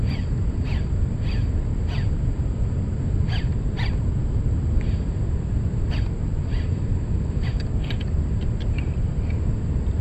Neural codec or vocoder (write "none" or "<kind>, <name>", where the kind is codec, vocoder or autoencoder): none